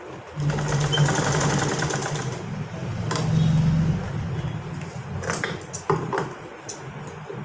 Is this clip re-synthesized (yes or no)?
no